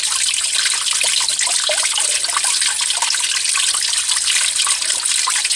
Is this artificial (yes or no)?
no